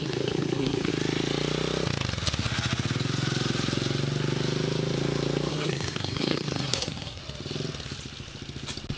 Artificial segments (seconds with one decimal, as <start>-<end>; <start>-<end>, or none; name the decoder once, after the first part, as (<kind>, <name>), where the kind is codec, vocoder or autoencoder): 0.0-0.9 (codec, SNAC); 5.5-7.2